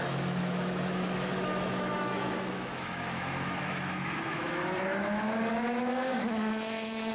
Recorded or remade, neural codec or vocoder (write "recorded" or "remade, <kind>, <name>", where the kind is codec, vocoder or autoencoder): remade, autoencoder, DAC-VAE